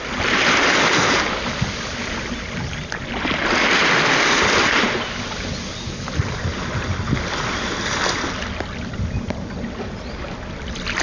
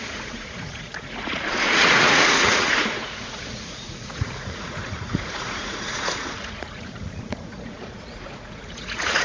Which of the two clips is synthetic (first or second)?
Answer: second